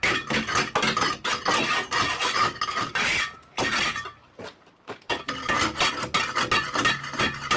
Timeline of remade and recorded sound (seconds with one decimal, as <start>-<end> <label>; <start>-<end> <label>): 0.0-2.7 recorded; 2.7-5.1 remade; 5.1-7.6 recorded